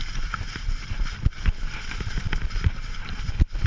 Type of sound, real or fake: real